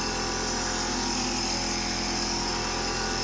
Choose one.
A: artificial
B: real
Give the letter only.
B